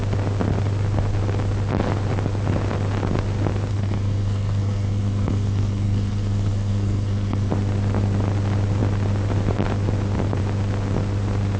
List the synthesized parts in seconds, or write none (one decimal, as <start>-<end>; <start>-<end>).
3.7-7.5